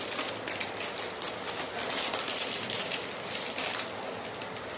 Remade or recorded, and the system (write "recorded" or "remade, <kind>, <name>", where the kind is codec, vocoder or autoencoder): recorded